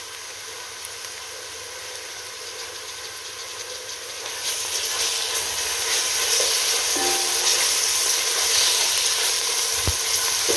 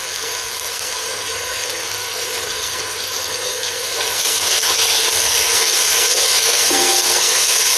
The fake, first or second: second